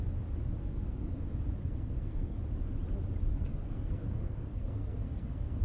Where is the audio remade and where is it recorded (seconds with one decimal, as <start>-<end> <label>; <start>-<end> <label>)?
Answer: 0.0-0.6 recorded; 0.6-1.2 remade; 1.2-1.6 recorded; 1.6-2.4 remade; 2.4-3.3 recorded; 3.3-5.6 remade